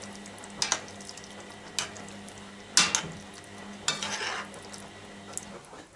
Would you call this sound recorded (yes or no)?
yes